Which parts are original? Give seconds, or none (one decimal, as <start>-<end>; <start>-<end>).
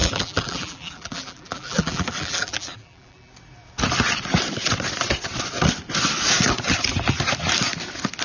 3.3-8.2